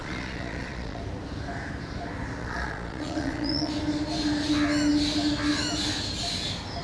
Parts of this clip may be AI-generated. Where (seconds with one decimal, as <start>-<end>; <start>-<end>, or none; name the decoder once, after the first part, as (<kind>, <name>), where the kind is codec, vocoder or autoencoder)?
0.0-1.0 (vocoder, Vocos); 2.4-3.7